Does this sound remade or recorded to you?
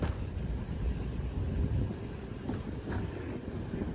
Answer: recorded